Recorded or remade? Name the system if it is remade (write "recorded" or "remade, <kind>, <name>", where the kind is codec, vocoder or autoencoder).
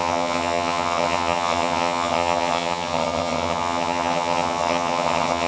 remade, vocoder, HiFi-GAN